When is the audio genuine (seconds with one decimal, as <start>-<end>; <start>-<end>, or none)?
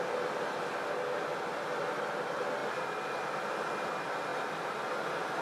0.0-5.4